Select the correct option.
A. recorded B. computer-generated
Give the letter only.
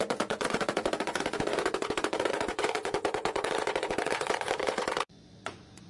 B